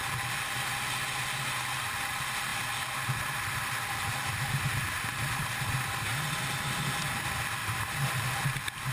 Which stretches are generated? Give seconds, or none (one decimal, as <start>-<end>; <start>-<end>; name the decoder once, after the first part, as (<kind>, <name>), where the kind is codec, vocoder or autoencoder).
5.1-6.7 (vocoder, BigVGAN v2); 7.6-8.5